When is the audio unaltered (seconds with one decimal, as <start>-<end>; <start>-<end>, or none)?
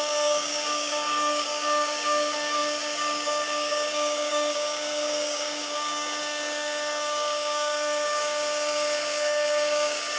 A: none